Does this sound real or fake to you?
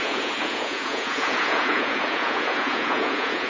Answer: fake